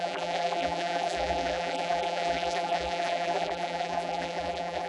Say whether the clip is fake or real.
fake